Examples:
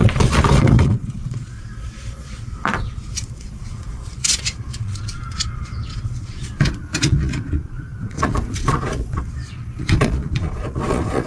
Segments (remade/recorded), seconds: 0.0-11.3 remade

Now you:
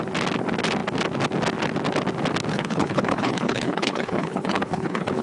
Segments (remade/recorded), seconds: 0.0-2.5 recorded; 2.5-5.2 remade

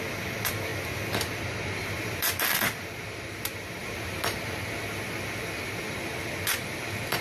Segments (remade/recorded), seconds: 0.0-7.2 recorded

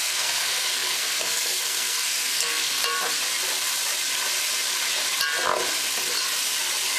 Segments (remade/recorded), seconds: 0.0-2.8 remade; 2.8-7.0 recorded

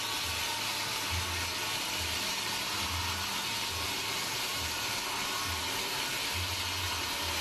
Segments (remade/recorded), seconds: 0.0-7.4 recorded